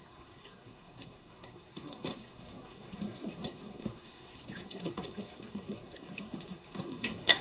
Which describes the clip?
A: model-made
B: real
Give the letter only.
A